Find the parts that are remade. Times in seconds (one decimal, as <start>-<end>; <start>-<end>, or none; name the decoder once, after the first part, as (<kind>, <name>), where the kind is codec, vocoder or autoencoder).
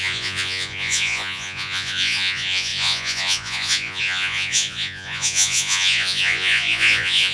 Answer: 0.0-7.3 (vocoder, Vocos)